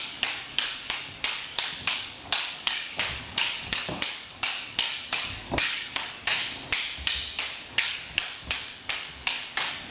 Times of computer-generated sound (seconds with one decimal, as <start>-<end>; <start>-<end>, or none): 0.0-6.4; 7.7-9.9